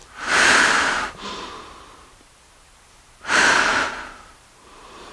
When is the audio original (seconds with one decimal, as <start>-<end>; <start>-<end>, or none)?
none